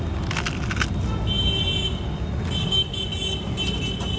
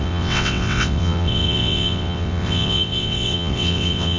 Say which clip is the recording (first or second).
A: first